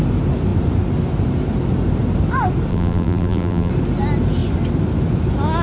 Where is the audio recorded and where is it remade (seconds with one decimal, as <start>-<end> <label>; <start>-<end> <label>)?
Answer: 0.0-2.7 recorded; 2.7-3.7 remade; 3.7-5.6 recorded